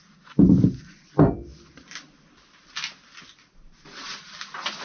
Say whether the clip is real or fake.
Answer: real